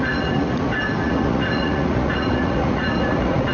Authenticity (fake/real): fake